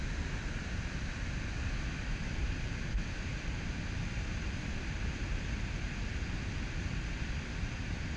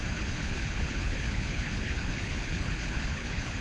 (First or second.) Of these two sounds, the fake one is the second